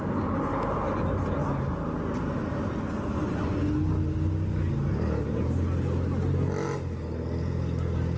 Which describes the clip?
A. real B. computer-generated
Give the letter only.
A